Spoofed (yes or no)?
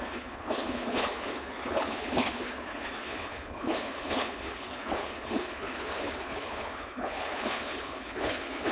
yes